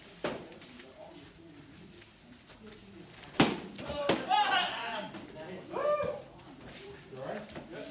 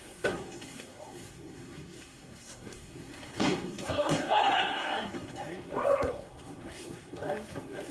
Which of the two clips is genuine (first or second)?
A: first